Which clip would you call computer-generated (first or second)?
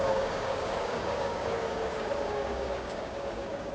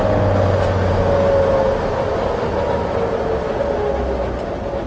first